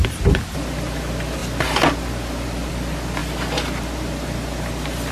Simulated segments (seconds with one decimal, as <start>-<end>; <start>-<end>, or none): none